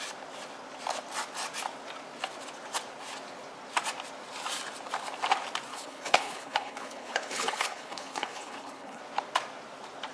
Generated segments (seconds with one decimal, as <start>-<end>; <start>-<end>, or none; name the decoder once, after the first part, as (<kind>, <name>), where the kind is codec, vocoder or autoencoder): 5.7-9.0 (codec, HILCodec)

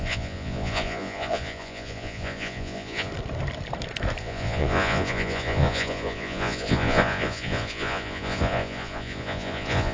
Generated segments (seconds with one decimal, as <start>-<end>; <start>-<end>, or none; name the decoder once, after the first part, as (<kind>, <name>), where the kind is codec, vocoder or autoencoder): 0.0-3.1 (vocoder, Vocos); 4.2-9.9